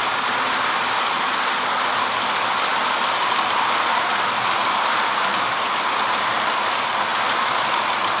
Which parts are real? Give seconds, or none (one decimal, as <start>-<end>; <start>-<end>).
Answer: 0.0-8.2